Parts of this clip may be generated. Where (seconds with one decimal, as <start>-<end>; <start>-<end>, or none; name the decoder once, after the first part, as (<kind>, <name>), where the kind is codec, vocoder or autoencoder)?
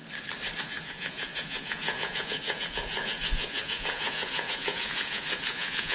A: 0.6-5.9 (vocoder, Vocos)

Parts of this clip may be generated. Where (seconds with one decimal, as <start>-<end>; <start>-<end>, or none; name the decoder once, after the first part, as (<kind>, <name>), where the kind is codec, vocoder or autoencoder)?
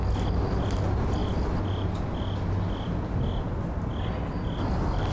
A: none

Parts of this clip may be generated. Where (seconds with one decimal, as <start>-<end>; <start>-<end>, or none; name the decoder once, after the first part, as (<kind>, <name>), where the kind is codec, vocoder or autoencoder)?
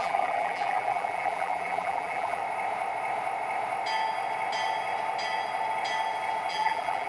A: 0.0-2.4 (vocoder, BigVGAN v2); 6.5-7.1